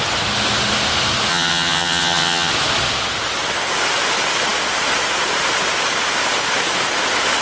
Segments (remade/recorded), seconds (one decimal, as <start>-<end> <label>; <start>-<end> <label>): 0.0-1.3 recorded; 1.3-2.5 remade; 2.5-7.4 recorded